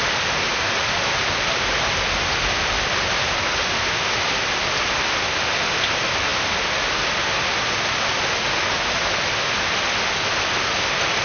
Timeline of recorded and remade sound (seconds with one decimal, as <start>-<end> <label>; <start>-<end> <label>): 0.0-11.2 recorded